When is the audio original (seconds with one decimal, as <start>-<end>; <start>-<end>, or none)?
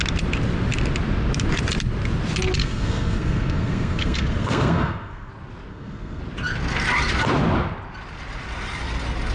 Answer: 0.0-2.6; 5.3-5.7; 6.2-9.3